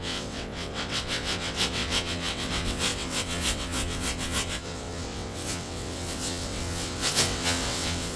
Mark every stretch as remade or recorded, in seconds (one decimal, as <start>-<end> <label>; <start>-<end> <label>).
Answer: 0.0-8.2 remade